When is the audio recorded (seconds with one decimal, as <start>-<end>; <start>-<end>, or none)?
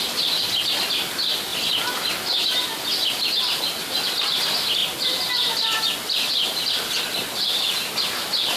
0.0-8.6